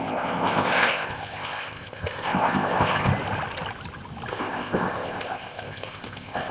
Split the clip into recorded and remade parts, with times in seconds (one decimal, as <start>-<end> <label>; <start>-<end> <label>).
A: 0.0-3.1 remade; 3.1-4.3 recorded; 4.3-6.5 remade

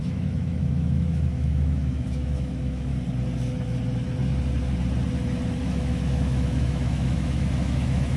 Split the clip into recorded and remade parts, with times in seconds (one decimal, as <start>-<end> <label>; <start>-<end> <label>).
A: 0.0-2.9 remade; 2.9-5.6 recorded; 5.6-8.2 remade

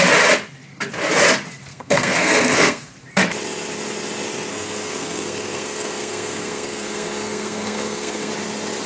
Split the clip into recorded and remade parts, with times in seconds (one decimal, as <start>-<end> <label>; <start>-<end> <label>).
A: 0.0-1.7 recorded; 1.7-2.9 remade; 2.9-4.5 recorded; 4.5-8.3 remade; 8.3-8.9 recorded

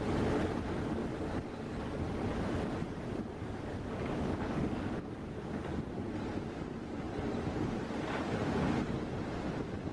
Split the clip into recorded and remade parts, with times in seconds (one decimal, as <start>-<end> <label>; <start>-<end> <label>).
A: 0.0-3.4 recorded; 3.4-5.8 remade; 5.8-9.9 recorded